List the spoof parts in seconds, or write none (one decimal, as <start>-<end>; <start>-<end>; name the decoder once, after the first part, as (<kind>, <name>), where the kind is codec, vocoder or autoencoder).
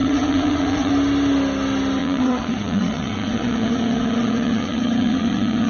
0.0-0.9 (vocoder, WaveNeXt); 2.0-5.7